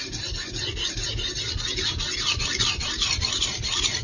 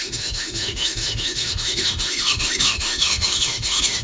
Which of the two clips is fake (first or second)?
second